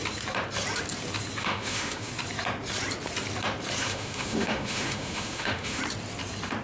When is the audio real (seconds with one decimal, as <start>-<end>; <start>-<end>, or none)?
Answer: 0.0-1.4; 2.1-3.8; 5.8-6.6